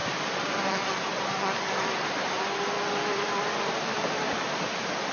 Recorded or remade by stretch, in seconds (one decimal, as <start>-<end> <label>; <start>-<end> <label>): 0.0-5.1 recorded